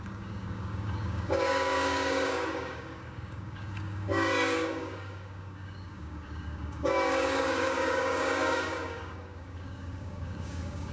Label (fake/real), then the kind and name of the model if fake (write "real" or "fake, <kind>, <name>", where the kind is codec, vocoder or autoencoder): fake, codec, DAC